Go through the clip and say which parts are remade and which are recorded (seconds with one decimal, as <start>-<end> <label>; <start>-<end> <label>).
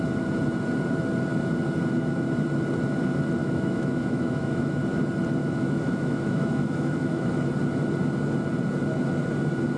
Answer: 0.0-3.4 recorded; 3.4-4.8 remade; 4.8-5.4 recorded; 5.4-7.5 remade; 7.5-9.8 recorded